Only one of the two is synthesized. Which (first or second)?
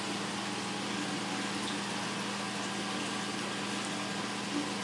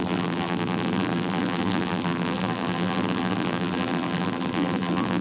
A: second